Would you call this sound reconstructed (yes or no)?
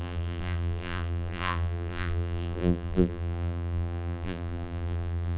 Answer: yes